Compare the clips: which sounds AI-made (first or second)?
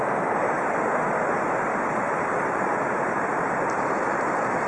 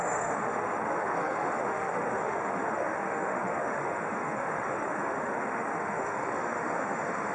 second